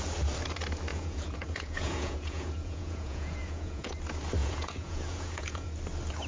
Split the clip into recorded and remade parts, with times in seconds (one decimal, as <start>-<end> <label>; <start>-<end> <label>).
0.0-0.9 recorded; 0.9-3.9 remade; 3.9-4.4 recorded; 4.4-5.7 remade; 5.7-6.3 recorded